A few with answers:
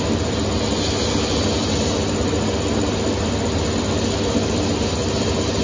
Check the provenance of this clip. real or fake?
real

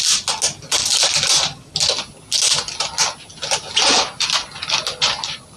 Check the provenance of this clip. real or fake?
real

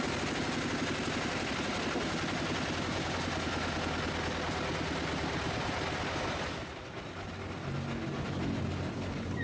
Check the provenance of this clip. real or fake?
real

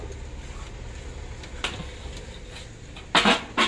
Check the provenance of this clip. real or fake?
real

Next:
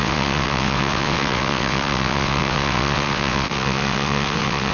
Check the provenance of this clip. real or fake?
fake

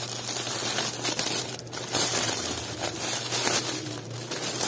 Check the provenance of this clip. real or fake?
real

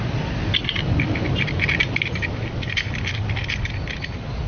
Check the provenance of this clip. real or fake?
fake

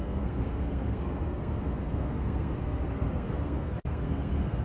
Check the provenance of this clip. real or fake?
fake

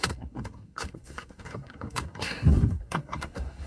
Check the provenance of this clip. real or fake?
fake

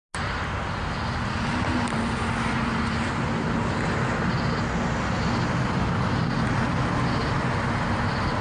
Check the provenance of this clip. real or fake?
real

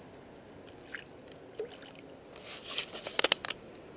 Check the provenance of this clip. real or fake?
real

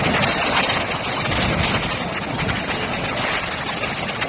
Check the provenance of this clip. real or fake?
real